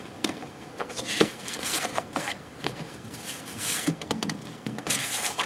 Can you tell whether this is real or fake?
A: fake